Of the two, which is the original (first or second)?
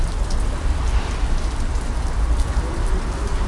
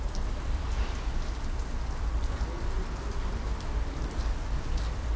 second